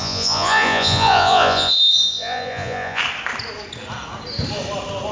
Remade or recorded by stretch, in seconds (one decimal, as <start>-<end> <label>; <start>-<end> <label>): 0.0-3.0 remade; 3.0-5.1 recorded